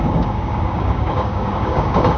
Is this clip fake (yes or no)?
yes